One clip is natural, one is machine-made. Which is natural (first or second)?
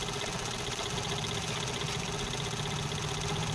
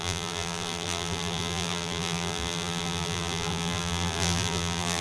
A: first